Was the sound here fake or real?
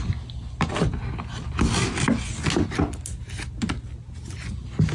real